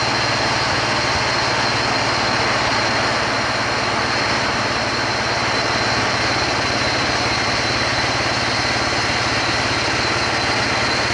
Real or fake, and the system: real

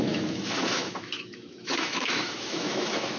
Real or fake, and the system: fake, autoencoder, DAC-VAE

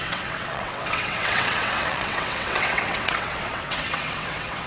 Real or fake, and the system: fake, vocoder, WaveNeXt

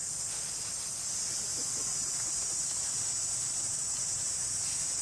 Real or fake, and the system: real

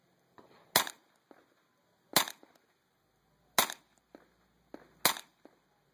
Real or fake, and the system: real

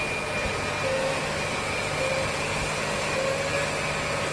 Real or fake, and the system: real